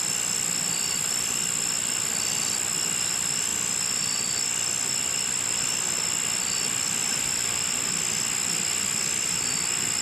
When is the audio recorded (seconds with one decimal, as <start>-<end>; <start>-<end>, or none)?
0.0-10.0